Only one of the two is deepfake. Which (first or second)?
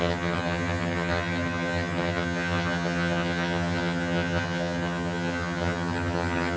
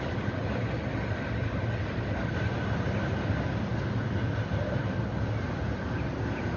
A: first